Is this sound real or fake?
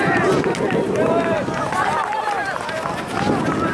real